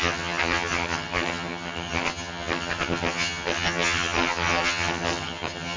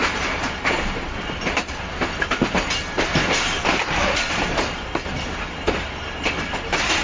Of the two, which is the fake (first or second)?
first